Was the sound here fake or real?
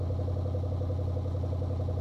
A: real